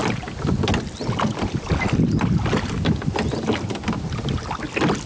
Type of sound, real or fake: real